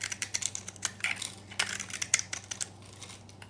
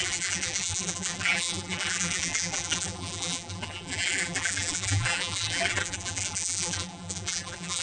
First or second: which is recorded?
first